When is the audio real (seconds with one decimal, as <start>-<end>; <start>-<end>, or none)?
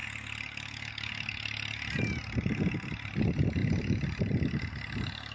0.0-3.6; 4.6-5.3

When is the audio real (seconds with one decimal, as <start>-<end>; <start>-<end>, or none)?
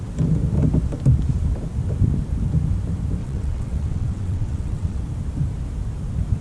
0.0-3.2; 5.0-6.4